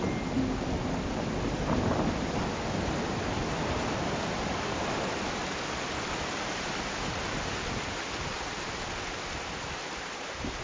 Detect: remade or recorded recorded